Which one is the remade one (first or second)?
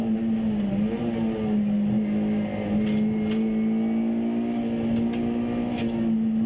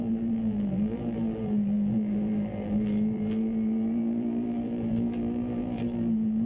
second